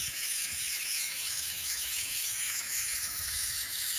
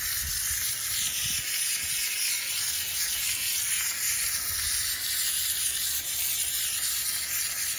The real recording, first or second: second